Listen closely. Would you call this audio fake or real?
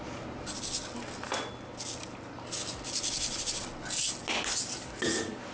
real